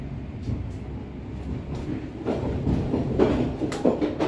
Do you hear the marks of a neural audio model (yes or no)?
no